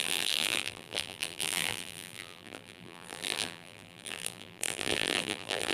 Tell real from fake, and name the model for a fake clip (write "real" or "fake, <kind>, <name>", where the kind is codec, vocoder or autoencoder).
fake, vocoder, BigVGAN v2